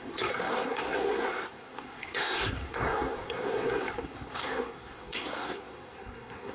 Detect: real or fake fake